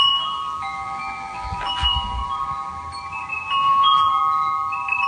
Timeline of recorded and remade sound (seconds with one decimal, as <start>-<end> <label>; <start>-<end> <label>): 0.0-2.2 remade; 2.2-3.3 recorded; 3.3-4.2 remade; 4.2-5.1 recorded